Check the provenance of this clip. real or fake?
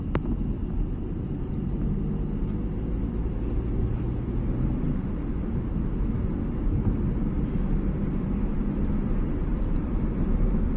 real